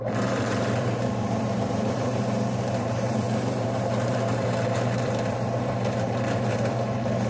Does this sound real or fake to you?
fake